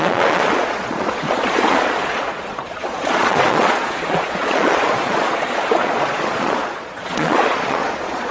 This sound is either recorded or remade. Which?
remade